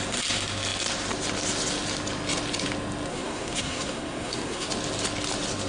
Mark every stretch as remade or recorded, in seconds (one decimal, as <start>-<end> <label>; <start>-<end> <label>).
0.0-3.1 recorded; 3.1-4.7 remade; 4.7-5.7 recorded